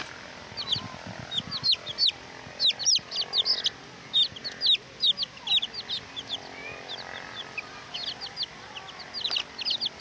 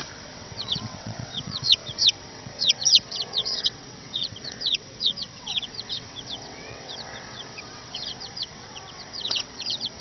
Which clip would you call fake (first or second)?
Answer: second